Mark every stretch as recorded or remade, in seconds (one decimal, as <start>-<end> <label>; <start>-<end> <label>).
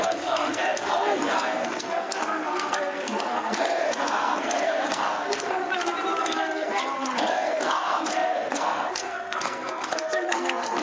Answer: 0.0-5.6 remade; 5.6-6.2 recorded; 6.2-10.8 remade